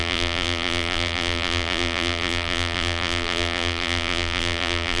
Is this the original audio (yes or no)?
no